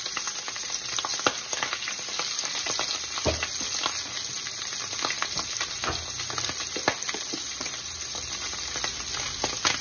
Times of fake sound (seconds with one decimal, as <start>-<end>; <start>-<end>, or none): none